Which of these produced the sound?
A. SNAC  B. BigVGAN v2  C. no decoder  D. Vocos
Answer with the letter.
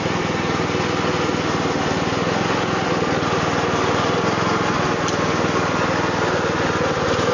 C